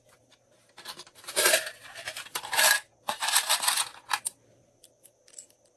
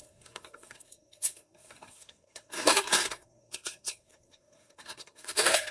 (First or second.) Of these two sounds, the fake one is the second